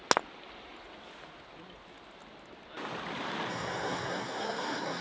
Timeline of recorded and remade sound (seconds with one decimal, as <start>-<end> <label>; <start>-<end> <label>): 0.0-3.5 recorded; 3.5-5.0 remade